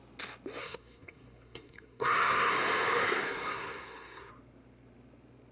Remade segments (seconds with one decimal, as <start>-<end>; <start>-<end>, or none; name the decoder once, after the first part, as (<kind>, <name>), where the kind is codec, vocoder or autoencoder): 0.6-2.5 (codec, SNAC); 3.0-4.3